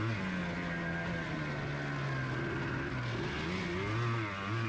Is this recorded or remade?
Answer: recorded